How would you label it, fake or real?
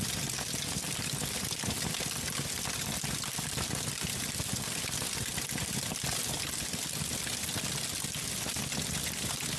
real